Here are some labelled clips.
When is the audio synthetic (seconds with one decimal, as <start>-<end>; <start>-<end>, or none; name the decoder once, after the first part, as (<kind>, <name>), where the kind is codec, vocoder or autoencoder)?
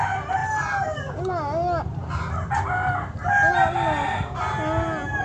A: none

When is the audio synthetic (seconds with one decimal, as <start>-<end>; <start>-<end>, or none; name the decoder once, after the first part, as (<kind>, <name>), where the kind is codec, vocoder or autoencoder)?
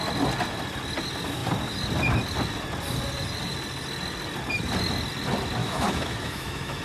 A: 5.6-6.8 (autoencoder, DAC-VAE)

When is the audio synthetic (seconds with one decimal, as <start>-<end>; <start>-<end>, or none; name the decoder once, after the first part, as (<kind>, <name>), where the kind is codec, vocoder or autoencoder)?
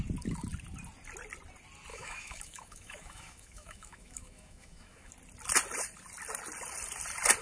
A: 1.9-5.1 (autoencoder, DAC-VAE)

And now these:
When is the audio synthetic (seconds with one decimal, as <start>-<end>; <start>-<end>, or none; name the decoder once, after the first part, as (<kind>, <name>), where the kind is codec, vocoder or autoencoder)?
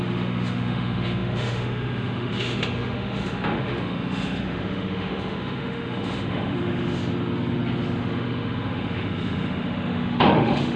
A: 0.0-7.0 (autoencoder, DAC-VAE); 8.0-10.8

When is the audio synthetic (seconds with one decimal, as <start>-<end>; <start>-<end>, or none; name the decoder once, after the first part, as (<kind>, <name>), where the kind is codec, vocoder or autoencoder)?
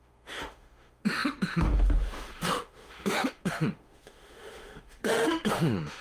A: 0.0-6.0 (autoencoder, DAC-VAE)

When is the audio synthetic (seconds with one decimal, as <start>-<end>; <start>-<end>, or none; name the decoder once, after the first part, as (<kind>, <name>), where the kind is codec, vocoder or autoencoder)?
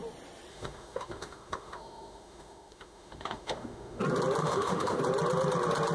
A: 0.5-4.0 (autoencoder, DAC-VAE); 4.4-5.0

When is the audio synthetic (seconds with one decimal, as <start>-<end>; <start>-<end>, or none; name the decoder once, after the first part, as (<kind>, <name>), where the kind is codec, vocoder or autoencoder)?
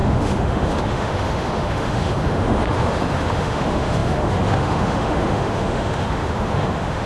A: 0.0-7.1 (autoencoder, DAC-VAE)